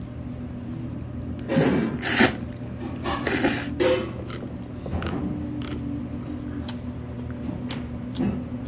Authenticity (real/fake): real